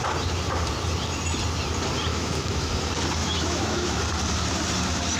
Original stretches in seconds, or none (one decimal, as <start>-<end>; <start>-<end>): 0.0-2.1; 2.7-3.2; 4.0-5.2